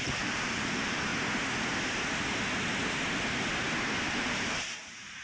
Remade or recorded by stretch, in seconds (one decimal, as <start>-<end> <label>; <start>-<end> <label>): 0.0-1.1 remade; 1.1-4.0 recorded; 4.0-5.2 remade